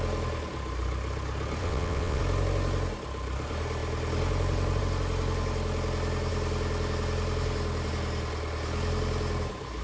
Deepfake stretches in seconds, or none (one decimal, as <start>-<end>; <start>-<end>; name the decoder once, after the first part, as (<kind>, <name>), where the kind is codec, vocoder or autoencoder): 1.6-2.2 (vocoder, WaveNeXt)